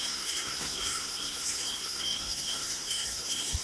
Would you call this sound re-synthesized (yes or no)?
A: yes